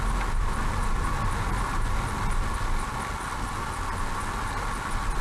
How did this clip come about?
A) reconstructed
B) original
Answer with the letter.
B